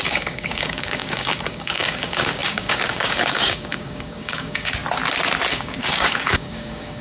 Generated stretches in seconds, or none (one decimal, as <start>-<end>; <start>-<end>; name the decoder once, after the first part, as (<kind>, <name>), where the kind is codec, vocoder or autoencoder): 0.0-4.8 (codec, DAC); 5.5-7.0